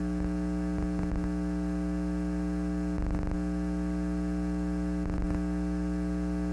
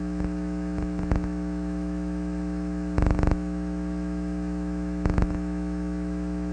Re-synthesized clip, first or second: second